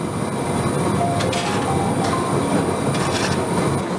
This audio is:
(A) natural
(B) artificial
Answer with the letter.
A